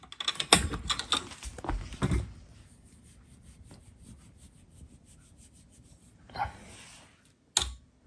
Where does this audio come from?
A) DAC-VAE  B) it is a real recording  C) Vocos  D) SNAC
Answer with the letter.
B